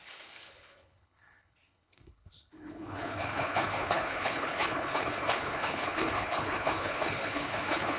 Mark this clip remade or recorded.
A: remade